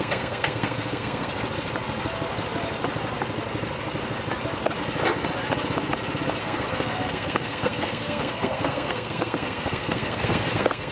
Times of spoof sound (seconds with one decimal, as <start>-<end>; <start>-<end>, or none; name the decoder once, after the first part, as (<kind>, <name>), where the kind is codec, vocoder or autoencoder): 0.0-1.3 (codec, SNAC); 6.4-10.9

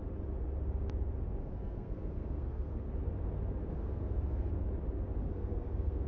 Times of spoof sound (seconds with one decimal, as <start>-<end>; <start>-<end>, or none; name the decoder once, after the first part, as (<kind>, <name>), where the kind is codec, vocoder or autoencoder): 1.4-2.9 (codec, SNAC); 3.7-4.5; 5.2-6.1